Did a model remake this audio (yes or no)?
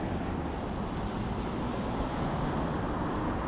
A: no